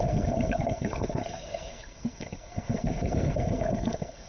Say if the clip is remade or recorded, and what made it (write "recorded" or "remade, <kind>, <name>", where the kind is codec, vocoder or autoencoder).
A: remade, codec, SNAC